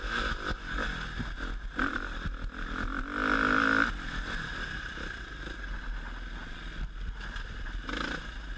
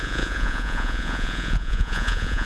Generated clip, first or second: second